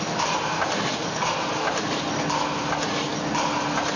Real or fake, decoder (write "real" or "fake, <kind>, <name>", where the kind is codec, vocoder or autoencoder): real